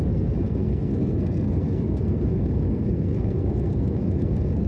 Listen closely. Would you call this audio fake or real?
fake